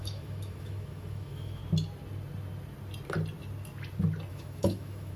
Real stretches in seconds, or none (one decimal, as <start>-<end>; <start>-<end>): 1.6-4.3